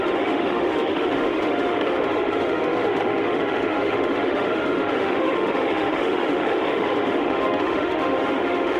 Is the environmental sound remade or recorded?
remade